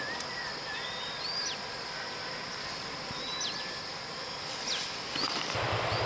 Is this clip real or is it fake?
real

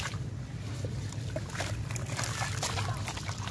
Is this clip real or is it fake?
real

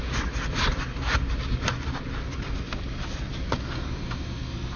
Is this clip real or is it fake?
real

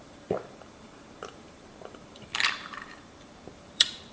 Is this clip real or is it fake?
fake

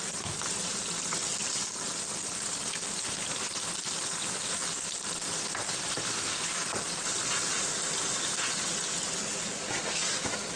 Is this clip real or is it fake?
real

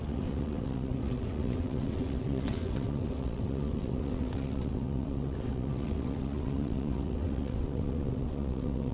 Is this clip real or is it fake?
fake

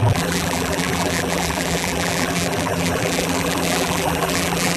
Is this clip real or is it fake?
fake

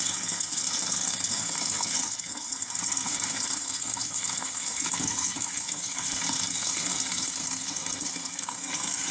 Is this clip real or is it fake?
fake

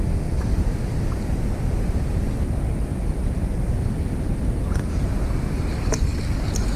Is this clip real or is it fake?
real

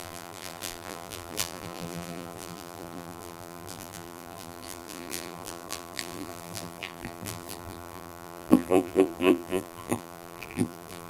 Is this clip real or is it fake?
fake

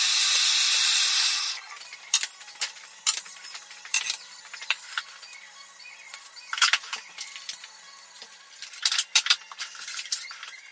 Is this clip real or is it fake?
fake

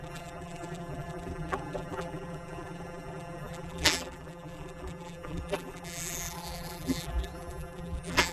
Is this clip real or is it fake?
fake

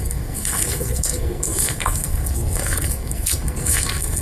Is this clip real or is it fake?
fake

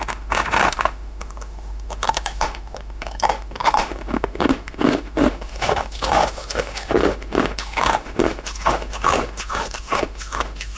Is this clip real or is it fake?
fake